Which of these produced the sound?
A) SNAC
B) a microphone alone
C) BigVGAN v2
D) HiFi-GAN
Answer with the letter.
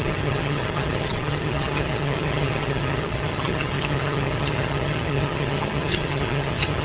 D